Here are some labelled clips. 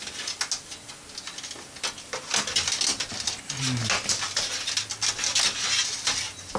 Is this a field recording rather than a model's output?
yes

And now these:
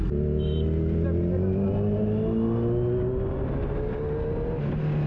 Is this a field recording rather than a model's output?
yes